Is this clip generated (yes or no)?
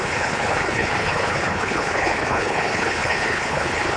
yes